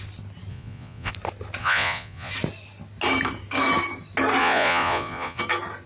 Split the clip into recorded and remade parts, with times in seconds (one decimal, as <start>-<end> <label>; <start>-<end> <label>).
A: 0.0-0.5 recorded; 0.5-1.1 remade; 1.1-1.6 recorded; 1.6-2.3 remade; 2.3-4.4 recorded; 4.4-5.4 remade; 5.4-5.9 recorded